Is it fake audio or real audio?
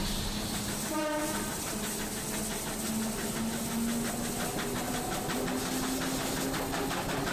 real